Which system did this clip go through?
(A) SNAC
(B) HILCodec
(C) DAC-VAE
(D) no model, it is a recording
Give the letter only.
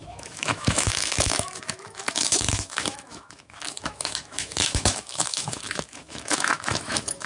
C